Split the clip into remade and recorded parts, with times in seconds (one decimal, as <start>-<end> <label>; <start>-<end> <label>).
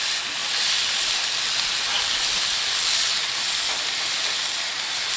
0.0-5.2 recorded